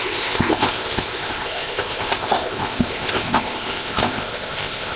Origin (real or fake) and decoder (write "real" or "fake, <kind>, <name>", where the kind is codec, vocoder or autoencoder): fake, codec, ZipCodec